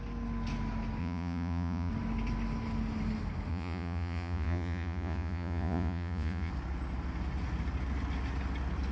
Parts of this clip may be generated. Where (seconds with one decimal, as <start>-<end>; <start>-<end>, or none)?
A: 1.0-1.9; 3.5-6.5

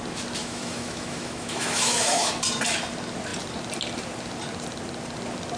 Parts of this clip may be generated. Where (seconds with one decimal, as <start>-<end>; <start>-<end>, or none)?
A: 0.4-2.3

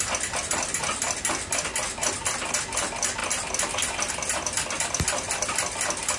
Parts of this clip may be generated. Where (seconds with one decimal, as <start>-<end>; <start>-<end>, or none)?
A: none

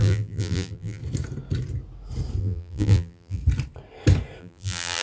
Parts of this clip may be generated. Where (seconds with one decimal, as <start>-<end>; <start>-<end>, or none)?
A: 0.0-1.0; 2.4-3.4; 4.4-5.0